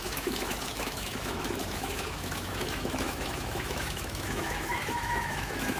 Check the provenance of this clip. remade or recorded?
remade